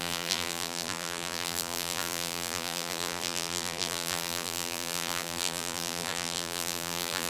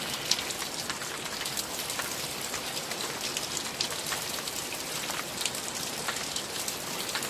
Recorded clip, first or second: second